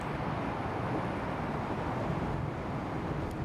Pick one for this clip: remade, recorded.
recorded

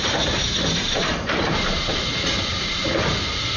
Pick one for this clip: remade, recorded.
remade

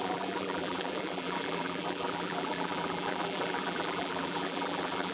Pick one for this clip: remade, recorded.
remade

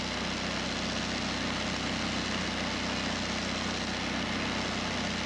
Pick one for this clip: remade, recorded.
recorded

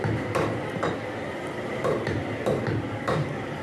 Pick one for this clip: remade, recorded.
remade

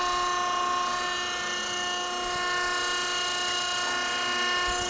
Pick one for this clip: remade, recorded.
recorded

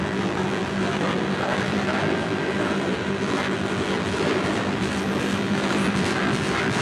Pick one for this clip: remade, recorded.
remade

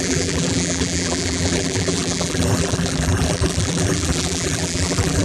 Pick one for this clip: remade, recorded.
remade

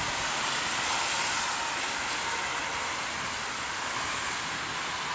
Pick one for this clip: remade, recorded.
recorded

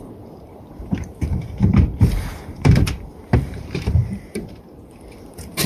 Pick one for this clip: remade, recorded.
remade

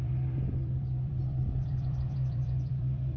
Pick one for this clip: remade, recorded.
remade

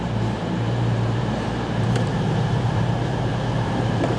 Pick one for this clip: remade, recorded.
remade